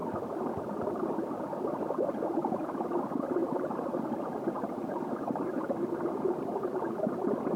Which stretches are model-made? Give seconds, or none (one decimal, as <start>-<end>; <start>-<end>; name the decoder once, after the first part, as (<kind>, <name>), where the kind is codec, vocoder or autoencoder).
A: 3.4-7.1 (vocoder, BigVGAN v2)